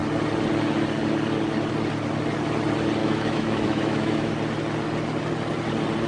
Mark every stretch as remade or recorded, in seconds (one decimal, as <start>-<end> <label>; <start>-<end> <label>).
0.0-3.0 recorded; 3.0-4.3 remade; 4.3-6.1 recorded